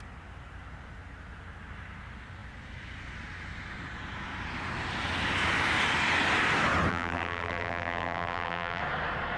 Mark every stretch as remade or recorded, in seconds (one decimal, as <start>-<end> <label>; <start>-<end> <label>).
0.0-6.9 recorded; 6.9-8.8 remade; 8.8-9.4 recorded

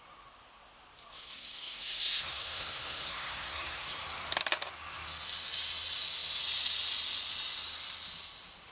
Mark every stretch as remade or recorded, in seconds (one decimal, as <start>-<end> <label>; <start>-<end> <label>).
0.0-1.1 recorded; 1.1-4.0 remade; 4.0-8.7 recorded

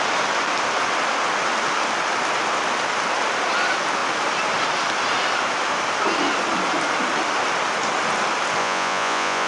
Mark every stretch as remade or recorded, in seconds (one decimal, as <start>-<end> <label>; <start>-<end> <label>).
0.0-8.6 recorded; 8.6-9.5 remade

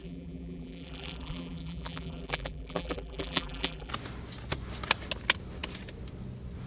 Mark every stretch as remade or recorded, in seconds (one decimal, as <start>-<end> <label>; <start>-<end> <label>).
0.0-3.9 remade; 3.9-6.7 recorded